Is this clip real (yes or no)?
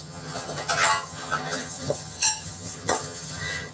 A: no